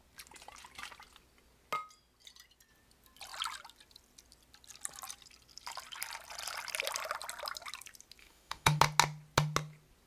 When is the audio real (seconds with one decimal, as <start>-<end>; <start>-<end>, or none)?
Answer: 0.0-8.2; 8.8-10.1